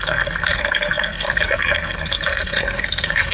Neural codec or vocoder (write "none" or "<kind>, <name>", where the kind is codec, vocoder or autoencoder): codec, SNAC